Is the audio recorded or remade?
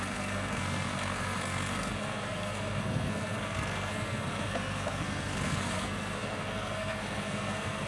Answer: remade